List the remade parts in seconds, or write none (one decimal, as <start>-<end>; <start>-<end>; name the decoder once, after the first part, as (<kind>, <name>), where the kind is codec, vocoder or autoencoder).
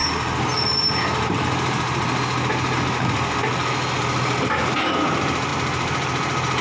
none